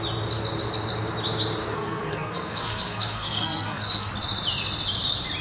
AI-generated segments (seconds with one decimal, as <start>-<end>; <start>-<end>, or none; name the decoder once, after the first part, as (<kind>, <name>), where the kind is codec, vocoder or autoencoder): 1.7-4.1 (codec, SNAC)